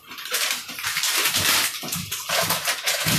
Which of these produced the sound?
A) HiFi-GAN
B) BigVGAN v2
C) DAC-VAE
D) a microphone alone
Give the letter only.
B